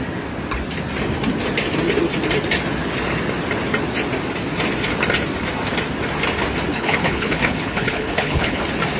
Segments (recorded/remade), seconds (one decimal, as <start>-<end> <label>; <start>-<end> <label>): 0.0-6.7 recorded; 6.7-8.6 remade; 8.6-9.0 recorded

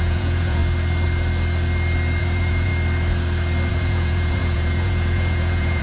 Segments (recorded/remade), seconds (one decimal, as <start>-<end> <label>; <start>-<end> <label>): 0.0-0.6 remade; 0.6-2.2 recorded; 2.2-2.7 remade; 2.7-3.7 recorded; 3.7-5.8 remade

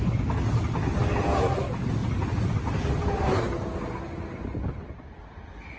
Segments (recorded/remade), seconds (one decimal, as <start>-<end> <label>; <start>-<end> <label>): 0.0-5.8 recorded

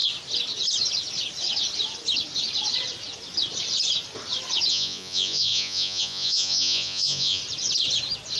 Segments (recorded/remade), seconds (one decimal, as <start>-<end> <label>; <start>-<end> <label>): 0.0-4.7 recorded; 4.7-7.4 remade; 7.4-8.4 recorded

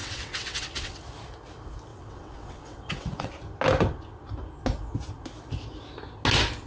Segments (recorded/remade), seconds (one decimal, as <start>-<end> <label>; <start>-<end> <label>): 0.0-1.0 remade; 1.0-1.9 recorded; 1.9-3.3 remade; 3.3-6.7 recorded